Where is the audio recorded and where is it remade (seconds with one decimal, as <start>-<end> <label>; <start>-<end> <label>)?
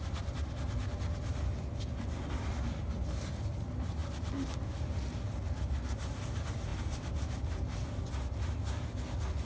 0.0-9.4 recorded